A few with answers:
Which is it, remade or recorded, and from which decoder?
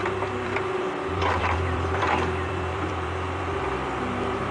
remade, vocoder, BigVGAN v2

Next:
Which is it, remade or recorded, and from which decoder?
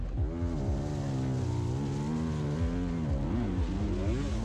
recorded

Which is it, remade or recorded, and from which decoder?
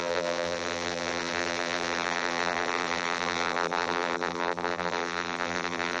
remade, vocoder, BigVGAN v2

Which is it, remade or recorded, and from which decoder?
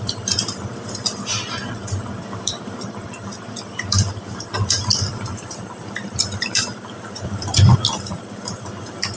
remade, vocoder, BigVGAN v2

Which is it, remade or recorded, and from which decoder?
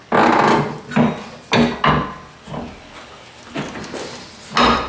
recorded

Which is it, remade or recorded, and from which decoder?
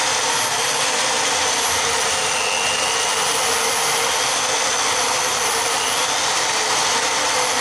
remade, vocoder, BigVGAN v2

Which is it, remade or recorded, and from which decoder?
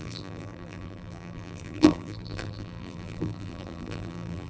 remade, vocoder, BigVGAN v2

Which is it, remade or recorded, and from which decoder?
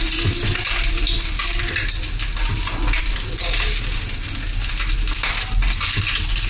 recorded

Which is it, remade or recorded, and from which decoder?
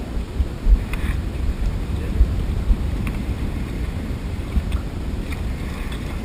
remade, vocoder, BigVGAN v2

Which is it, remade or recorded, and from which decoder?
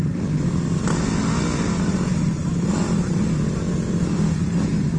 recorded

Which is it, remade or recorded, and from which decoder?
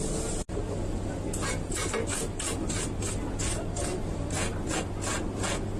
recorded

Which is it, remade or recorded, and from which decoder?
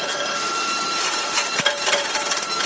remade, vocoder, BigVGAN v2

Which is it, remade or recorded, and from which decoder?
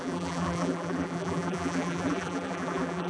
remade, vocoder, BigVGAN v2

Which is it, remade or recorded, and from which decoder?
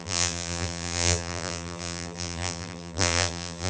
remade, vocoder, BigVGAN v2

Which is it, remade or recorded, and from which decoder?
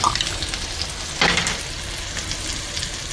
recorded